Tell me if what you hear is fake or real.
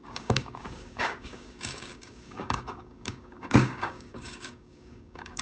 fake